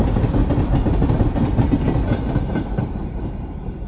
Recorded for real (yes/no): yes